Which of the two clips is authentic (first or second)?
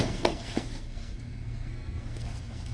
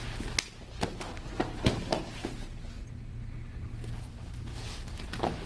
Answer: second